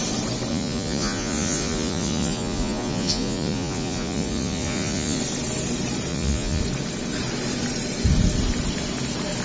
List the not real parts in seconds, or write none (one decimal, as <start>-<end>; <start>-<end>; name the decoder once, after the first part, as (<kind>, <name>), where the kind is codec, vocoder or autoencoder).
0.5-5.2 (vocoder, Vocos); 6.1-6.6